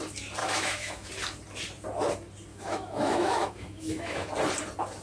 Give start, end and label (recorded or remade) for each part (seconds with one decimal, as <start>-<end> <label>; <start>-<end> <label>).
0.0-0.4 recorded; 0.4-1.1 remade; 1.1-2.5 recorded; 2.5-4.3 remade; 4.3-5.0 recorded